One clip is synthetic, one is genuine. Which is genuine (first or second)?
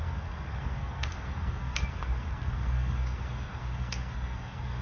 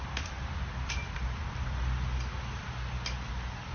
second